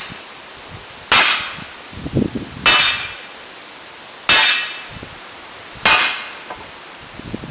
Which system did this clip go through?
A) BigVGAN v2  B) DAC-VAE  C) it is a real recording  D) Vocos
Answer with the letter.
C